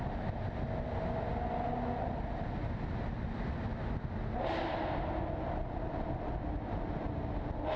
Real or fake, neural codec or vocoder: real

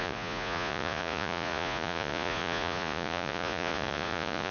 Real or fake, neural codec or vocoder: fake, vocoder, Vocos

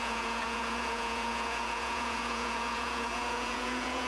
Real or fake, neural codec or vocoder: fake, vocoder, Vocos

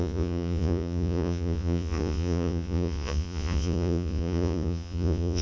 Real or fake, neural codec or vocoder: fake, vocoder, Vocos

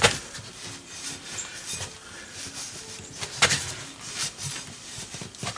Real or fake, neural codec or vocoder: real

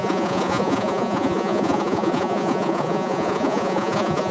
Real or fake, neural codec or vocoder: fake, vocoder, Vocos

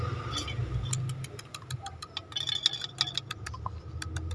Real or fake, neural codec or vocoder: real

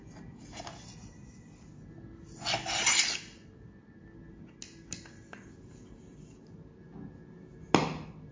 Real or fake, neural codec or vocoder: real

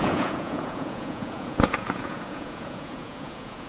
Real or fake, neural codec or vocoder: fake, vocoder, Vocos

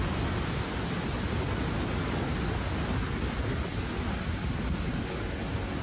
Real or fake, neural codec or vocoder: real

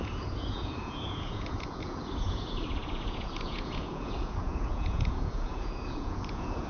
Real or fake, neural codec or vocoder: fake, vocoder, Vocos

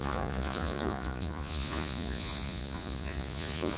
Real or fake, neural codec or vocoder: fake, vocoder, Vocos